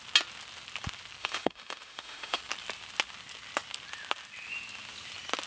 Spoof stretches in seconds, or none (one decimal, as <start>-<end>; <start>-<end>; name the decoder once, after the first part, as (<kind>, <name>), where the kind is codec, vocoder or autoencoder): 1.2-2.4 (autoencoder, DAC-VAE)